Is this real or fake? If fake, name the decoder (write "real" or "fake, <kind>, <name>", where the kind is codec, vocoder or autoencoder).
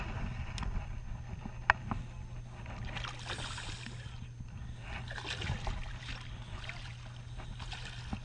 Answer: real